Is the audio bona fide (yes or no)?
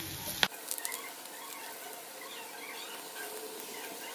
yes